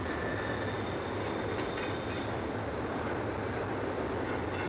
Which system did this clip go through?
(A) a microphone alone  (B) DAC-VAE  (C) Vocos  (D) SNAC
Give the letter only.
A